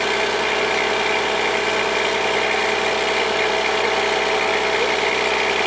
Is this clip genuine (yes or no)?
yes